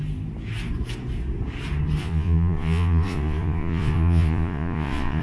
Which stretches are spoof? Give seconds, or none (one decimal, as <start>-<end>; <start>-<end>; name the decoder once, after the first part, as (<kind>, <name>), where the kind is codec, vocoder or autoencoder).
2.0-5.2 (vocoder, Vocos)